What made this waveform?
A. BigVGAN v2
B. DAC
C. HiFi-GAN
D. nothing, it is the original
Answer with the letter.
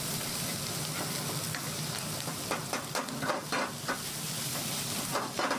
D